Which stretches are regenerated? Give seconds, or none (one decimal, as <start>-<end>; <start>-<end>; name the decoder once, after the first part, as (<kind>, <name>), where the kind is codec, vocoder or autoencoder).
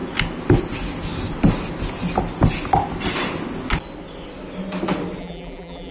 5.2-5.9 (vocoder, BigVGAN v2)